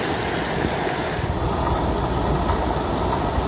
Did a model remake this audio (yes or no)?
no